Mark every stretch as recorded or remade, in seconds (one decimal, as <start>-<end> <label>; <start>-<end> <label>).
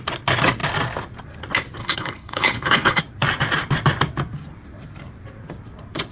0.0-1.8 recorded; 1.8-3.0 remade; 3.0-6.1 recorded